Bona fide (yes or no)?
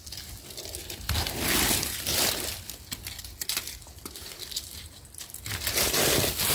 yes